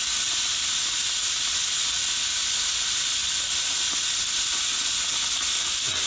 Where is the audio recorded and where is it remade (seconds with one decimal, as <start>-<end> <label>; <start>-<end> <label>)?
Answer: 0.0-6.1 recorded